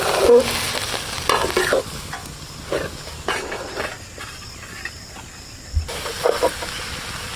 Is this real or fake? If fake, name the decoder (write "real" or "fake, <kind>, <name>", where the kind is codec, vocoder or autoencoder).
real